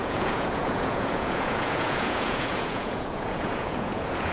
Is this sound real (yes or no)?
no